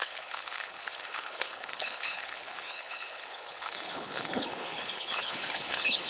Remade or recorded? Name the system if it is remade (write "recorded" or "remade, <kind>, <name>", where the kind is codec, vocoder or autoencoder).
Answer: remade, codec, HILCodec